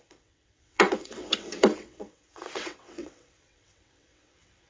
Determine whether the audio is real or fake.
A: fake